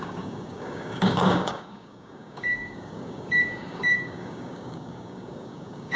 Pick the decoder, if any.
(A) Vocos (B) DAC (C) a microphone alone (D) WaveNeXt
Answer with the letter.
B